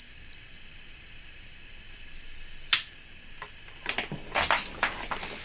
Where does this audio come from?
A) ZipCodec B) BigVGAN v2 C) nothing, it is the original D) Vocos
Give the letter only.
C